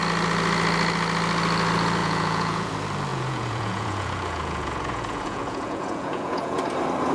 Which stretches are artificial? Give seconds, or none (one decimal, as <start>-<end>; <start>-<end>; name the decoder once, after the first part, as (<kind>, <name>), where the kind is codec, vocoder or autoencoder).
2.0-2.7 (vocoder, Vocos); 3.1-6.6